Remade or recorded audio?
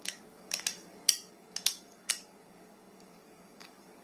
remade